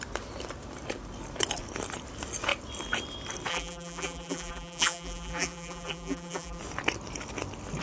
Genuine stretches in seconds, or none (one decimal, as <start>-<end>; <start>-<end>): 0.0-3.5; 6.6-7.8